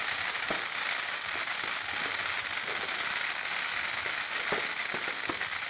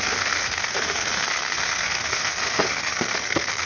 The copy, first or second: second